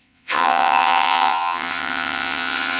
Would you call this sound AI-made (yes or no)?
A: yes